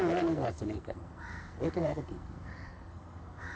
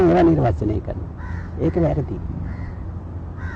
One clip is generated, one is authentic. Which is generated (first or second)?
first